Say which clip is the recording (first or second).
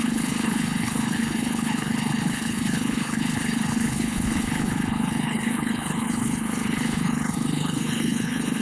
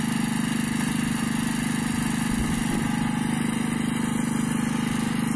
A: second